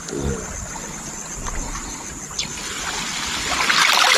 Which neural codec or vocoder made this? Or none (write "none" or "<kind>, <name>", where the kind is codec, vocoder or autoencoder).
none